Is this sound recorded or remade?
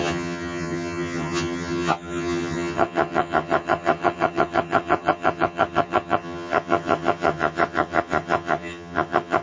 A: remade